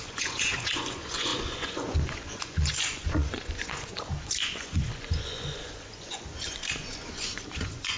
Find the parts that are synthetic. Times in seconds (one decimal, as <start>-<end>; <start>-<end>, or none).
0.0-8.0